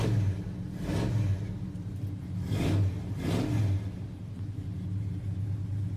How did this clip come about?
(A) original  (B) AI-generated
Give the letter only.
A